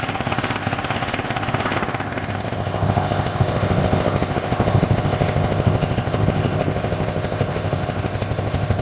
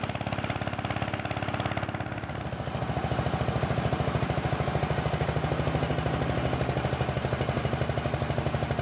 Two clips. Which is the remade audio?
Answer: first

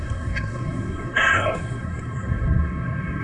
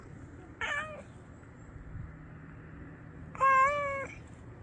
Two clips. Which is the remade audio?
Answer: first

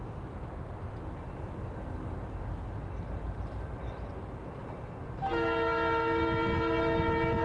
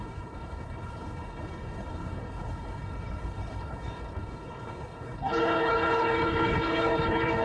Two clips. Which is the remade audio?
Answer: second